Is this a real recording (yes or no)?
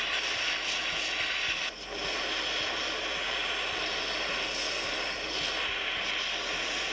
yes